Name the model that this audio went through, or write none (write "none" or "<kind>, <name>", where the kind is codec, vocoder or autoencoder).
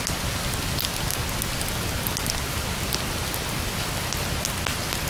none